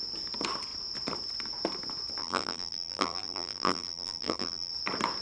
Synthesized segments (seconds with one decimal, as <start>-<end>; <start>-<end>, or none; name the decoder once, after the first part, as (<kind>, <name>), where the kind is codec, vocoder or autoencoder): 2.2-4.7 (vocoder, BigVGAN v2)